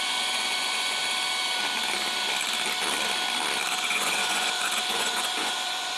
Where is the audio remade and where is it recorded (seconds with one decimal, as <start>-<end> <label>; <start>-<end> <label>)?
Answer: 0.0-1.0 remade; 1.0-3.7 recorded; 3.7-6.0 remade